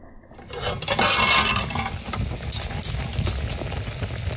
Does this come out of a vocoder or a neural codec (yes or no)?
no